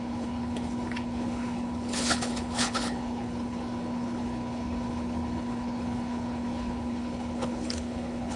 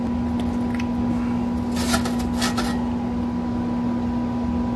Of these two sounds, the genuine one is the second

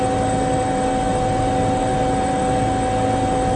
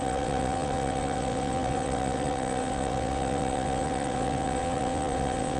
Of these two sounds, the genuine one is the first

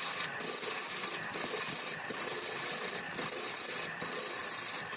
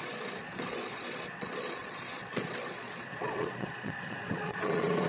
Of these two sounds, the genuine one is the first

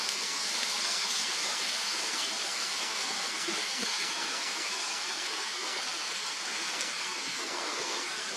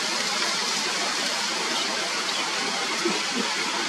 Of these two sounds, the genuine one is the second